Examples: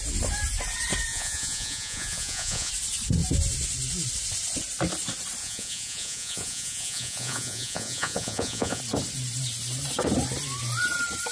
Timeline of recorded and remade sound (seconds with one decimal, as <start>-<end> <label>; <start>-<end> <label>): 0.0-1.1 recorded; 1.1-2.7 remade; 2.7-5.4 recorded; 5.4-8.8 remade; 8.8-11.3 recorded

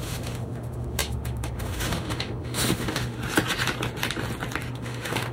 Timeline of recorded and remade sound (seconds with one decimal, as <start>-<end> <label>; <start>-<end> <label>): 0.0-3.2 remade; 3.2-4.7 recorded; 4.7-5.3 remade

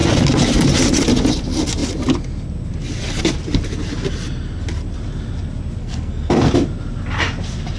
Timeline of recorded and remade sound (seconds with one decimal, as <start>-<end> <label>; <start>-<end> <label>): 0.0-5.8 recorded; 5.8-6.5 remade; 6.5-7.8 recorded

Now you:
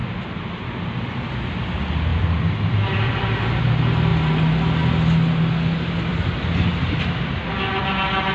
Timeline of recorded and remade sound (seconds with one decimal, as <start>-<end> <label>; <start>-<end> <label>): 0.0-1.3 remade; 1.3-2.1 recorded; 2.1-3.6 remade; 3.6-6.1 recorded; 6.1-7.9 remade; 7.9-8.3 recorded

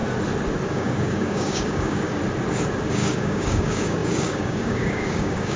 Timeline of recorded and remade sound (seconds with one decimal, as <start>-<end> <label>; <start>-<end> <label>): 0.0-0.7 recorded; 0.7-2.2 remade; 2.2-2.9 recorded; 2.9-5.6 remade

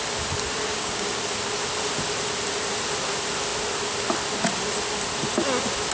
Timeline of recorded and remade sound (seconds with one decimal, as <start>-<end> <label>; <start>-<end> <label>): 0.0-0.7 recorded; 0.7-1.2 remade; 1.2-5.9 recorded